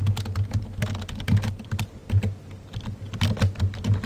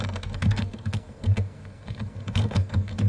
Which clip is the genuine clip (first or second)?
first